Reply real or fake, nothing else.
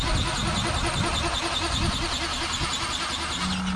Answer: real